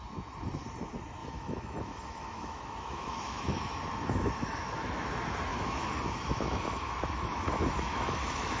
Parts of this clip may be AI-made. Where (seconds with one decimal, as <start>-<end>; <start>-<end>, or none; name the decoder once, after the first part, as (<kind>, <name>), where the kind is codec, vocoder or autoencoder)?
1.2-5.1 (autoencoder, DAC-VAE); 5.5-8.6